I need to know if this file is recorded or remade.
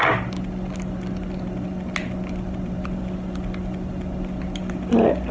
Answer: recorded